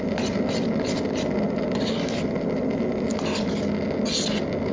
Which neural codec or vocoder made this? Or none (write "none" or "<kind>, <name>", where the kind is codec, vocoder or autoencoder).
none